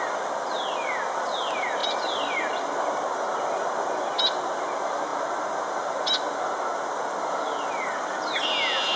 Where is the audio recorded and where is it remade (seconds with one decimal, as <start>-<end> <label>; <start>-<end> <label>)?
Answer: 0.0-9.0 recorded